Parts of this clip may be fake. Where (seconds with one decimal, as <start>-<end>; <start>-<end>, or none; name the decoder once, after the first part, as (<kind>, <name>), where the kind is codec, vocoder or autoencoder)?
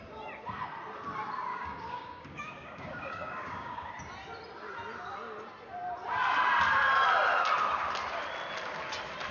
1.5-3.9 (codec, DAC)